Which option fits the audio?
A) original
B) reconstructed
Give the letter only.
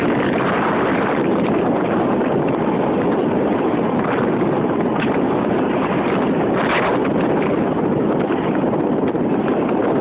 A